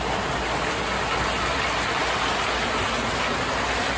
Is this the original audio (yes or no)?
yes